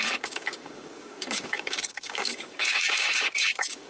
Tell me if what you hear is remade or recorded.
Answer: remade